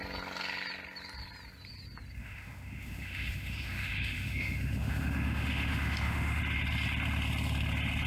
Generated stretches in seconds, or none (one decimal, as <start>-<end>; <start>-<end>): 2.2-6.4